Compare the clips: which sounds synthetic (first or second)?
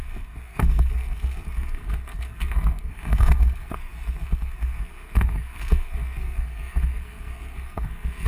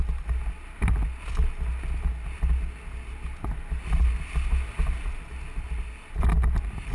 first